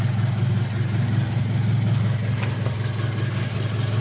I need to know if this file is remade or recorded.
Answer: recorded